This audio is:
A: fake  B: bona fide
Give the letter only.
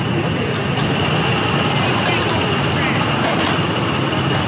B